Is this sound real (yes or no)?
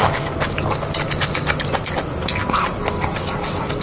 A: yes